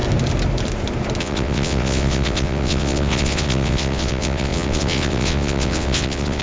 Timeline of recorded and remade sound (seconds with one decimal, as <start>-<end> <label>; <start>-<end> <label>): 0.0-1.2 recorded; 1.2-6.4 remade